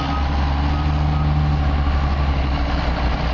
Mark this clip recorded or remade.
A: recorded